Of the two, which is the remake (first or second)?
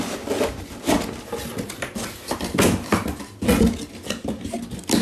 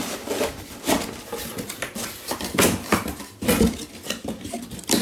second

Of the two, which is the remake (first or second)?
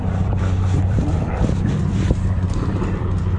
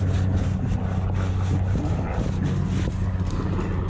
first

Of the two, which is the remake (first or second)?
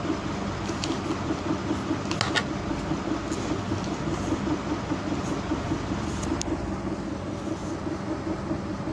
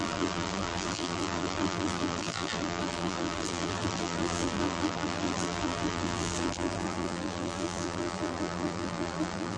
second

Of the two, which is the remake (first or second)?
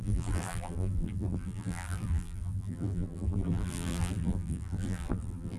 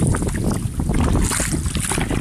first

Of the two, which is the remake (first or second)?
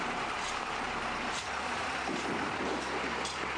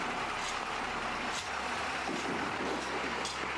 first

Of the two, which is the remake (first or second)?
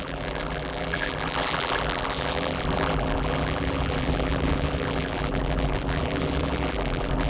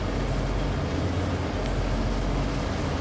first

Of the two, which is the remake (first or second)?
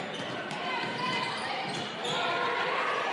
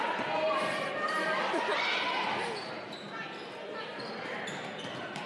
first